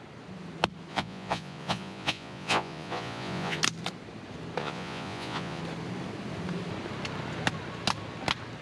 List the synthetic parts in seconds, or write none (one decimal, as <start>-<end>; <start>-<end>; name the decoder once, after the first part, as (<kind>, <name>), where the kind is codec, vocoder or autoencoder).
0.9-3.6 (vocoder, Vocos); 4.6-5.6